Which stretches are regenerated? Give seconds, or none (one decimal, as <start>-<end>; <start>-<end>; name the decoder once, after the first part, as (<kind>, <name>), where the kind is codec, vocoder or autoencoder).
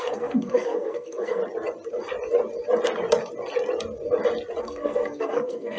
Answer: 0.0-1.4 (codec, SNAC); 4.6-5.8